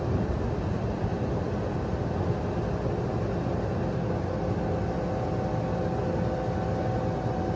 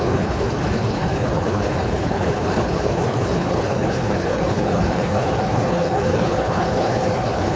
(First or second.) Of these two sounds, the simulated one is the second